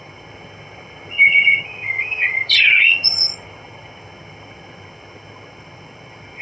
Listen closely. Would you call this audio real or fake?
fake